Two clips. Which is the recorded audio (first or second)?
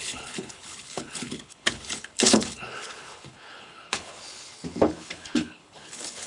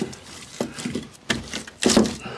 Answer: second